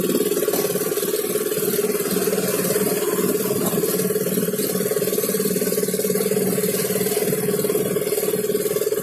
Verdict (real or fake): fake